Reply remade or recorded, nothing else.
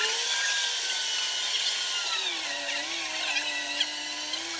remade